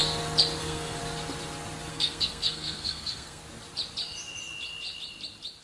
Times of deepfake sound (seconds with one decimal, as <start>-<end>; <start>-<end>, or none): 0.6-1.0; 1.9-3.4